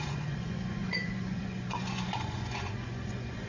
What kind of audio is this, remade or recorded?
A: remade